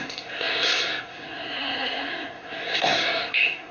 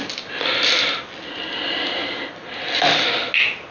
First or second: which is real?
second